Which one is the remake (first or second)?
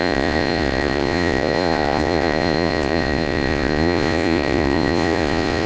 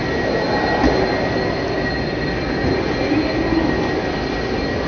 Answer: first